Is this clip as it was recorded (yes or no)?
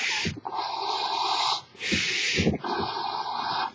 yes